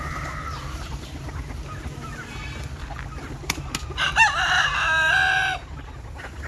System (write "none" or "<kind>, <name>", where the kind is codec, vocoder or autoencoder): none